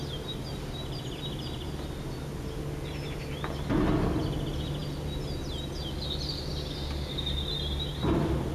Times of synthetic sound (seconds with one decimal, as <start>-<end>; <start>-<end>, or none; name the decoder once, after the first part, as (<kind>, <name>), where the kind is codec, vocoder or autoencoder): none